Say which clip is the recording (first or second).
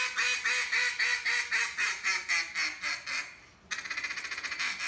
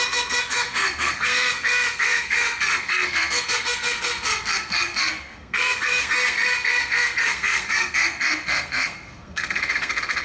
first